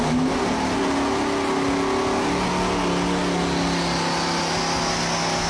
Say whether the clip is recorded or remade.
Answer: recorded